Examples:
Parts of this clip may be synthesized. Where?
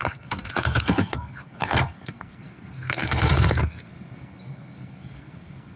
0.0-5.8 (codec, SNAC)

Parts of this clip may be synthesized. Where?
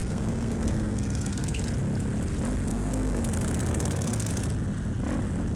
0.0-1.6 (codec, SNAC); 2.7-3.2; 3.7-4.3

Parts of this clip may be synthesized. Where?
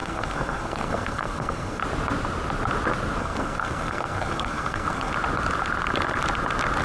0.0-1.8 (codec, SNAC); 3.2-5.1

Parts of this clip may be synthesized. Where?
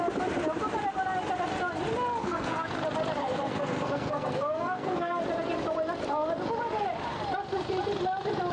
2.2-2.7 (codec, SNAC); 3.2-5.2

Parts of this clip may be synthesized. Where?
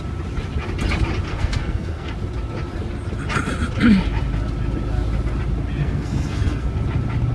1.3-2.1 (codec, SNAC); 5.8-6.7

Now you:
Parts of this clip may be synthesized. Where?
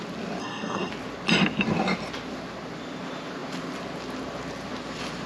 0.4-0.9 (codec, SNAC)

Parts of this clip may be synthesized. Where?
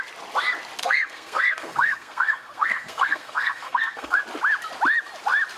0.8-4.2 (codec, SNAC)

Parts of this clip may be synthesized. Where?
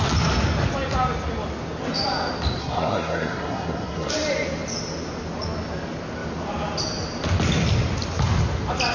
2.6-4.1 (codec, SNAC)